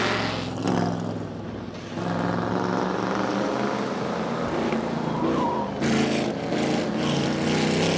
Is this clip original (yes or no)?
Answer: yes